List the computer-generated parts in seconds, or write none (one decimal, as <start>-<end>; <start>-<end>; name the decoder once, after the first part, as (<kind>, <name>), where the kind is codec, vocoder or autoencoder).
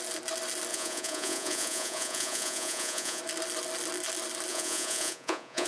0.7-3.2 (vocoder, Vocos); 4.5-5.7